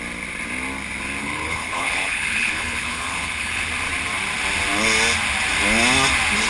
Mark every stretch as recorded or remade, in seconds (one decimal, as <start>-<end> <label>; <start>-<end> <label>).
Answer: 0.0-1.2 recorded; 1.2-3.7 remade; 3.7-6.5 recorded